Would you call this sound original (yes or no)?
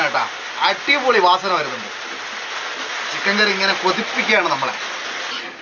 yes